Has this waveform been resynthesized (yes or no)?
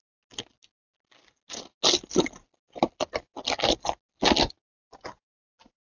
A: no